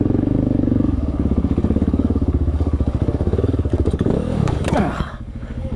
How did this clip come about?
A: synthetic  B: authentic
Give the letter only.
A